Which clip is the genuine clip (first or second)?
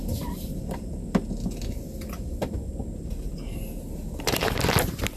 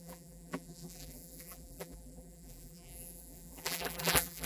first